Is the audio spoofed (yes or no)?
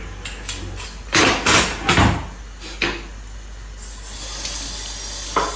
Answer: no